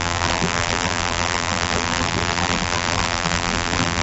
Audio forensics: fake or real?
fake